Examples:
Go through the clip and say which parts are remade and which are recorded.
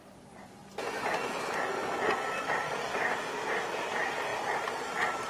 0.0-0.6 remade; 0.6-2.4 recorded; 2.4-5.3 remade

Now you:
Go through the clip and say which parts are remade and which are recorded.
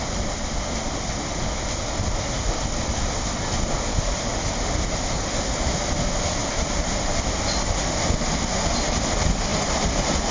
0.0-6.4 recorded; 6.4-7.4 remade; 7.4-9.5 recorded; 9.5-10.3 remade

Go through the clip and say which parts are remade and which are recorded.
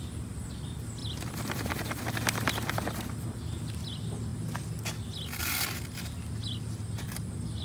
0.0-1.0 recorded; 1.0-2.0 remade; 2.0-7.6 recorded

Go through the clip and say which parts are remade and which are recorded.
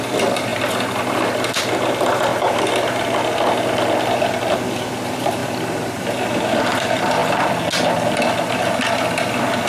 0.0-0.5 remade; 0.5-1.6 recorded; 1.6-2.3 remade; 2.3-4.2 recorded; 4.2-7.2 remade; 7.2-8.9 recorded; 8.9-9.7 remade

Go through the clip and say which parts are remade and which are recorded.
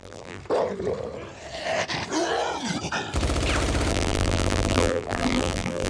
0.0-0.4 remade; 0.4-3.9 recorded; 3.9-5.9 remade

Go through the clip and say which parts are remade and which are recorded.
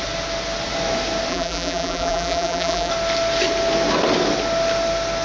0.0-1.3 recorded; 1.3-2.9 remade; 2.9-5.2 recorded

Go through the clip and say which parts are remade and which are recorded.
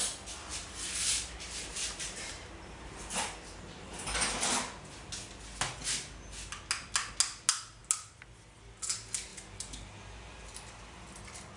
0.0-0.5 recorded; 0.5-3.9 remade; 3.9-11.6 recorded